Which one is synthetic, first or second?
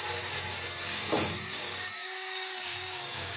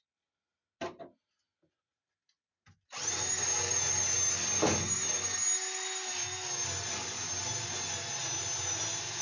first